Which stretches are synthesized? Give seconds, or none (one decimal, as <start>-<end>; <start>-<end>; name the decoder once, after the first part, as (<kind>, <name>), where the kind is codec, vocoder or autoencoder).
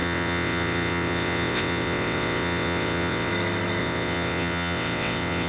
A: 0.0-3.3 (vocoder, WaveNeXt); 3.8-5.5